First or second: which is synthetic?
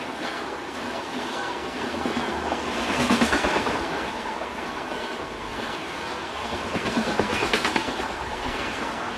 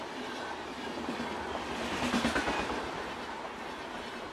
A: first